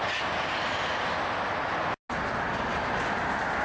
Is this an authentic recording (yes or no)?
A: yes